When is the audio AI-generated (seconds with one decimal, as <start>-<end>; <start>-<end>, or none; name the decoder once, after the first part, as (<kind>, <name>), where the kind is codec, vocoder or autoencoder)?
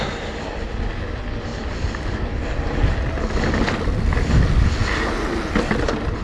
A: none